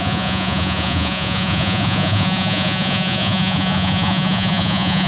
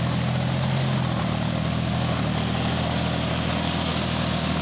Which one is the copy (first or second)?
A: first